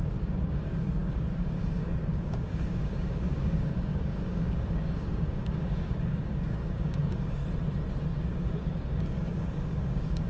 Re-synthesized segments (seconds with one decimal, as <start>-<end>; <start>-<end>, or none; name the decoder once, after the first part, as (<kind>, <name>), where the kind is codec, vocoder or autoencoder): 0.0-7.4 (codec, DAC); 8.2-10.3